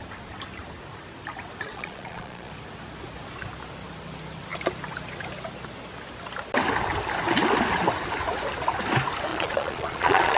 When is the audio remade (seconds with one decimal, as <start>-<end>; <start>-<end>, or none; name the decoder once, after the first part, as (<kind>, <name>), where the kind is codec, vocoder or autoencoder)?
1.7-2.5 (vocoder, Vocos); 9.3-10.4